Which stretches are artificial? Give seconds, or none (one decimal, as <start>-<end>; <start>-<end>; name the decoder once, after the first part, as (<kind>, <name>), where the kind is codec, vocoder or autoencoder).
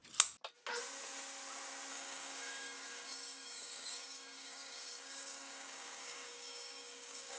1.9-7.4 (codec, DAC)